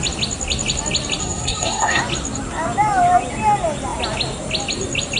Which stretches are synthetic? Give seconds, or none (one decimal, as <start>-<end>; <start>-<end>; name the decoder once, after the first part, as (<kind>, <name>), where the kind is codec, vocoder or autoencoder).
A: 1.2-2.0 (codec, SNAC)